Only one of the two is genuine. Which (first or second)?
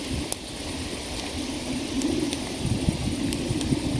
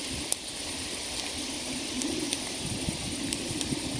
first